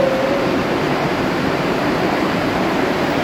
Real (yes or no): no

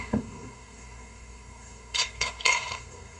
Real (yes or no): no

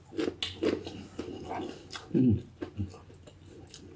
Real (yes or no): yes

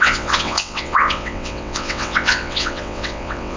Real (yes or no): no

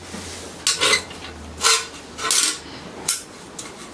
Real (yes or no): yes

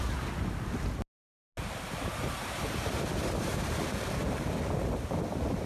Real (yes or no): yes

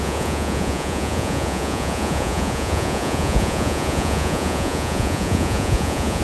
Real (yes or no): no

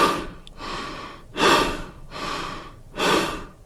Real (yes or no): yes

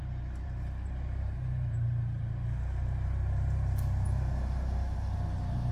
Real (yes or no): no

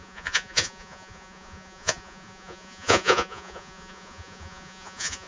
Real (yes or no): no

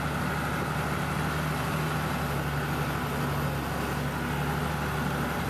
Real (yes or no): yes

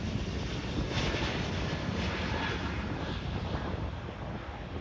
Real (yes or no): yes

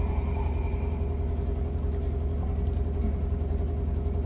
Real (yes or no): yes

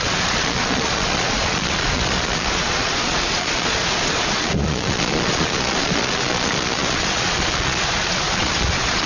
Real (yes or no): no